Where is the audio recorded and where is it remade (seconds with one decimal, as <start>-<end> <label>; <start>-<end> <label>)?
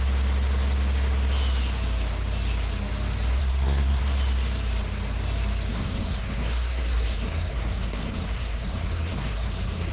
0.0-3.4 recorded; 3.4-4.0 remade; 4.0-5.7 recorded; 5.7-9.9 remade